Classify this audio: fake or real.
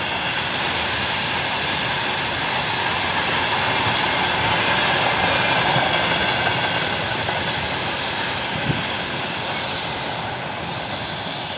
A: real